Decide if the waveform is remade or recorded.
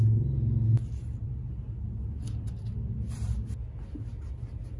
recorded